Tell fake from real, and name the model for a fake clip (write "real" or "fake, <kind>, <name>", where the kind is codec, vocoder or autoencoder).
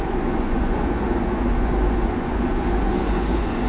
fake, vocoder, Vocos